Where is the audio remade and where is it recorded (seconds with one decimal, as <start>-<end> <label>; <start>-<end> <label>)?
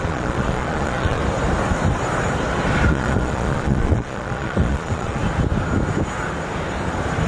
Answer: 0.0-1.2 remade; 1.2-2.9 recorded; 2.9-5.2 remade; 5.2-7.3 recorded